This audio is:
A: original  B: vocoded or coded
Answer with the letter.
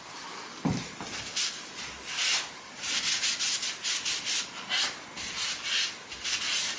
A